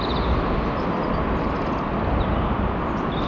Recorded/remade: recorded